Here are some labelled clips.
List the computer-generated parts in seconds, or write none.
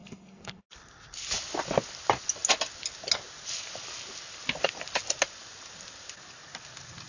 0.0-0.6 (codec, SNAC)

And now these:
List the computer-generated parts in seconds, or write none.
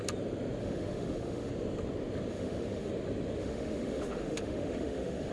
0.6-1.5 (autoencoder, DAC-VAE); 2.3-2.9; 3.4-5.3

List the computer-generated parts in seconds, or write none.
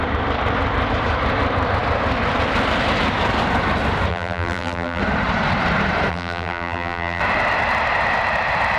4.1-5.0 (vocoder, BigVGAN v2); 6.1-7.2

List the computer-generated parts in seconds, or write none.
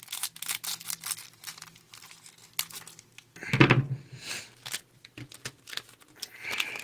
none